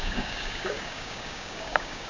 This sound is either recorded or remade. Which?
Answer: remade